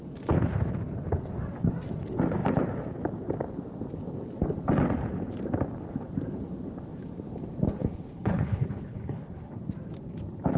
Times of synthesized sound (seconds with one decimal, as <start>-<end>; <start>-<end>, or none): 7.8-9.5